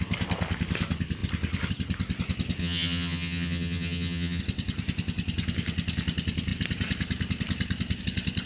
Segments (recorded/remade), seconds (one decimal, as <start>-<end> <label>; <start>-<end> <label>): 0.0-2.6 recorded; 2.6-4.4 remade; 4.4-8.5 recorded